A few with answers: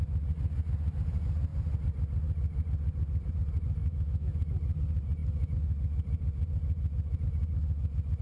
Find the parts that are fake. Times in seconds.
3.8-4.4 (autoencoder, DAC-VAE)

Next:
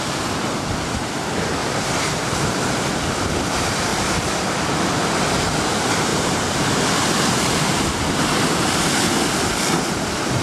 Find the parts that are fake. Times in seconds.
1.6-2.9 (vocoder, BigVGAN v2); 3.9-4.6; 6.1-7.6

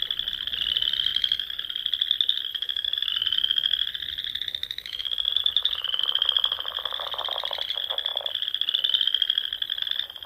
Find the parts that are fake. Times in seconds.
2.5-3.1 (autoencoder, DAC-VAE); 4.6-6.0

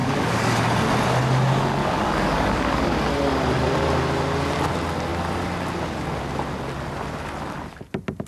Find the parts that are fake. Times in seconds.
0.0-0.5 (codec, DAC); 1.8-3.1

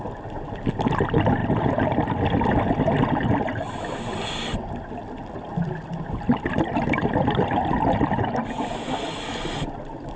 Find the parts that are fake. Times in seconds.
none

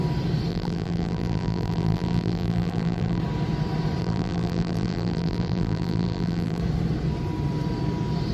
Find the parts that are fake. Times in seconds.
0.5-3.2 (vocoder, BigVGAN v2); 4.0-6.6

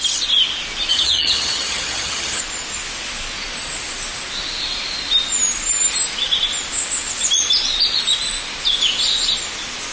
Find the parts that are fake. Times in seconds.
0.9-2.4 (vocoder, HiFi-GAN)

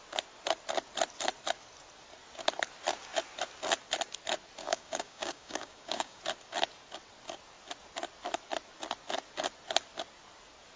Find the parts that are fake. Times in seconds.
4.6-6.2 (codec, DAC)